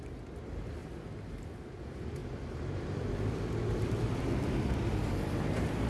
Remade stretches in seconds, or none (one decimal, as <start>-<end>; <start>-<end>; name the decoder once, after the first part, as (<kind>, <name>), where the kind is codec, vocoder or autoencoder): 0.0-0.8 (vocoder, BigVGAN v2); 1.8-5.9